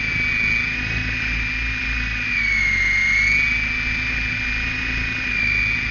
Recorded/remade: recorded